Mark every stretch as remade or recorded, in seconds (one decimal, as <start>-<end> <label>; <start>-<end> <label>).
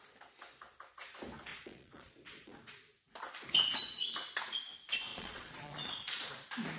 0.0-1.5 recorded; 1.5-2.7 remade; 2.7-5.1 recorded; 5.1-6.3 remade; 6.3-6.8 recorded